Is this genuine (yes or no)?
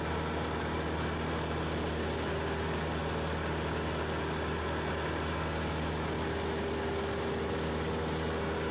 yes